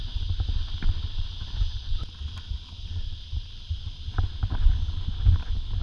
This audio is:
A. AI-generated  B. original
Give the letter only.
B